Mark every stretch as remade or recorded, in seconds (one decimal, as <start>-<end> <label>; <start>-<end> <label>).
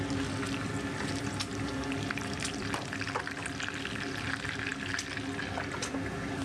0.0-6.4 recorded